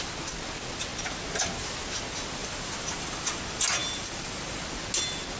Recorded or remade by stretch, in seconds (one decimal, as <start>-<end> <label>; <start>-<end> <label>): 0.0-2.4 recorded; 2.4-3.4 remade; 3.4-3.8 recorded; 3.8-4.6 remade; 4.6-5.4 recorded